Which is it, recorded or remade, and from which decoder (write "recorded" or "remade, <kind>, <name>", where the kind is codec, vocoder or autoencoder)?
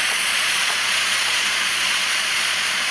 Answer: remade, vocoder, Vocos